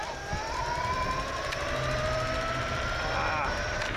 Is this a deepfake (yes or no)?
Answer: no